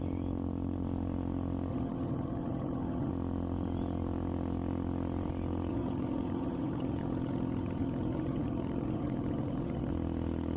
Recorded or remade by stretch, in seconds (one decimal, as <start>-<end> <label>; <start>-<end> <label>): 0.0-1.7 recorded; 1.7-3.1 remade; 3.1-5.7 recorded; 5.7-9.9 remade; 9.9-10.6 recorded